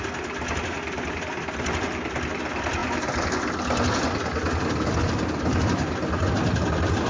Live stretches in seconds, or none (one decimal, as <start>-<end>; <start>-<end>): 0.0-7.1